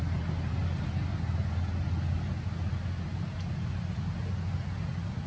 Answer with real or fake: real